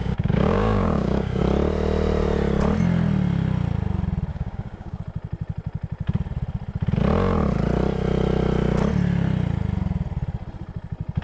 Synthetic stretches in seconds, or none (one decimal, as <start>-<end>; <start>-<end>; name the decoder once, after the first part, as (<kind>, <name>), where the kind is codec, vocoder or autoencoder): 0.0-1.4 (codec, DAC); 4.3-5.0